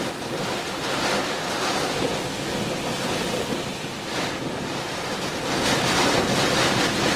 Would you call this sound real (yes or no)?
yes